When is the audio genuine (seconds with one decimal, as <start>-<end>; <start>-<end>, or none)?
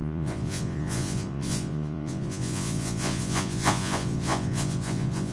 none